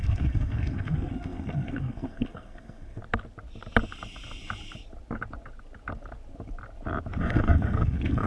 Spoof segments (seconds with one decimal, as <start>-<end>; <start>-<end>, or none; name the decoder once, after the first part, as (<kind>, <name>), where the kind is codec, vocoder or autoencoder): 0.0-3.0 (codec, SNAC); 7.2-8.3